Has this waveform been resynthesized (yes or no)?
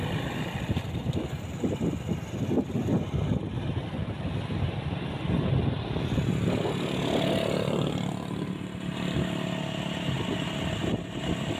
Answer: no